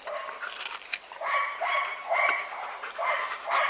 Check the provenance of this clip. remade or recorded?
recorded